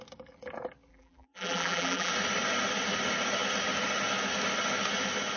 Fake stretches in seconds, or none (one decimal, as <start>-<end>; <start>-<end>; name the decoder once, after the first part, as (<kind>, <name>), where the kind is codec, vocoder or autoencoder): 0.9-2.1 (vocoder, BigVGAN v2)